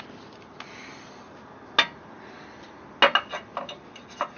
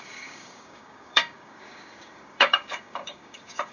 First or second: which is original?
first